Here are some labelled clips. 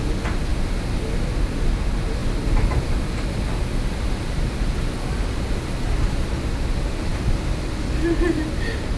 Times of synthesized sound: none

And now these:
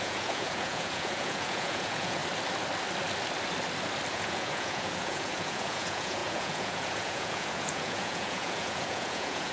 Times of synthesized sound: 0.0-2.2 (vocoder, Vocos); 4.1-9.5

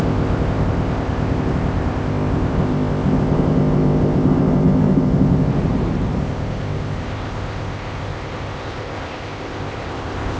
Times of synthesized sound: 0.0-5.5 (codec, ZipCodec); 6.2-10.4